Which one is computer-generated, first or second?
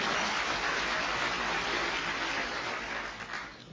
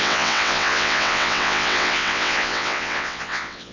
second